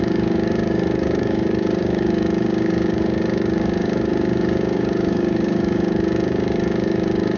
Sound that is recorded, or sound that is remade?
remade